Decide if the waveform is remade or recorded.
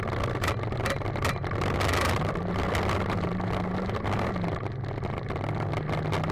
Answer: recorded